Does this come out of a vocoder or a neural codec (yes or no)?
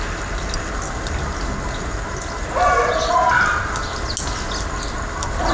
no